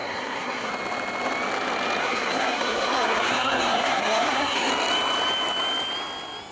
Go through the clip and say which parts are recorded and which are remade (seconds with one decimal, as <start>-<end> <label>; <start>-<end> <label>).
0.0-0.7 remade; 0.7-2.0 recorded; 2.0-4.7 remade; 4.7-6.5 recorded